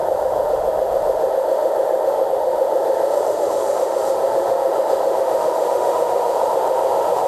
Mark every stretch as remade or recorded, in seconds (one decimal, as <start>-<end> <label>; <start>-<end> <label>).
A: 0.0-7.3 remade